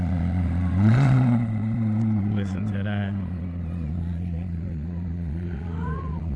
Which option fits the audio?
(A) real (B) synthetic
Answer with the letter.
B